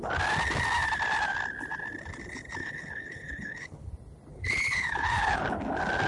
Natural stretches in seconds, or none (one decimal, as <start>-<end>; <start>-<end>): 0.0-2.6; 3.9-4.3; 5.4-6.1